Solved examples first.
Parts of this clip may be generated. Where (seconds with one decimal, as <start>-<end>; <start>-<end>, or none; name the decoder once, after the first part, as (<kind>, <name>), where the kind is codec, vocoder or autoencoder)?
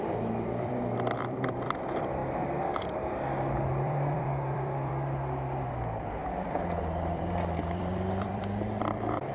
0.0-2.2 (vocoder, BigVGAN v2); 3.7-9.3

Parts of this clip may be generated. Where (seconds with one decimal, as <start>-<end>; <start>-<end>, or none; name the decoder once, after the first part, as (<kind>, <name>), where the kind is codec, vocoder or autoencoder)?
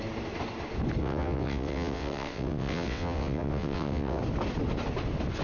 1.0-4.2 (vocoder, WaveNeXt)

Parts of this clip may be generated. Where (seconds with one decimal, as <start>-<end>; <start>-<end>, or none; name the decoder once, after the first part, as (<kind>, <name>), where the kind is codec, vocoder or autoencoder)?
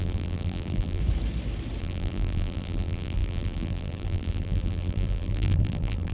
0.0-1.0 (vocoder, BigVGAN v2); 1.8-6.1